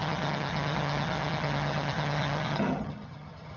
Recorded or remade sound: remade